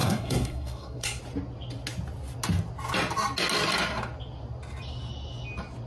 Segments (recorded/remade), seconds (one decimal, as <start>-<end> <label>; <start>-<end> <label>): 0.0-1.2 remade; 1.2-5.9 recorded